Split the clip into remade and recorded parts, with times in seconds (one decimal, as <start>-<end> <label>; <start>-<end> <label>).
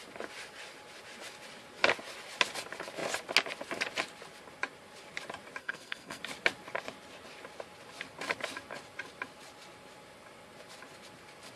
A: 0.0-5.6 recorded; 5.6-6.2 remade; 6.2-11.6 recorded